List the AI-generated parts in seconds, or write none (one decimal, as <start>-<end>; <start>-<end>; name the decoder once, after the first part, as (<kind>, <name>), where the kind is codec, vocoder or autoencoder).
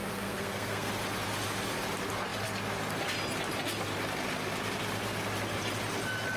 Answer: 0.0-0.9 (codec, SNAC)